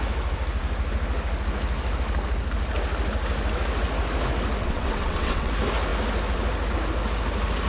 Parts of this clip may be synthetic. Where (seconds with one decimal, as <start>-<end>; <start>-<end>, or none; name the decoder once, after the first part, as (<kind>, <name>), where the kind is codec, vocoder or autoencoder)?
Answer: 4.6-5.5 (vocoder, WaveNeXt)